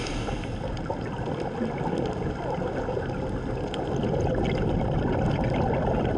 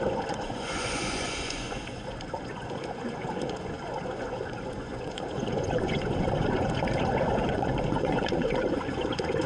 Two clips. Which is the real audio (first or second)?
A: first